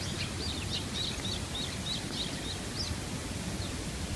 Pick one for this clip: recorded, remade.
recorded